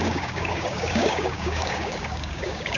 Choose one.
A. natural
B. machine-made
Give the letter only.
B